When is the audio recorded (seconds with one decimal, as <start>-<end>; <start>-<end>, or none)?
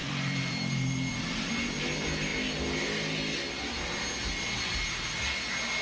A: 1.5-5.8